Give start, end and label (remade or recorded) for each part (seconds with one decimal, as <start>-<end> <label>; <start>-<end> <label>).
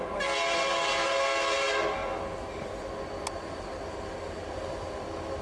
0.0-5.4 recorded